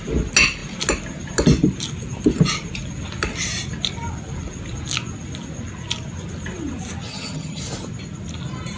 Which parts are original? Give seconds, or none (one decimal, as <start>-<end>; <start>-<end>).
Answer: 0.0-7.1; 7.6-8.8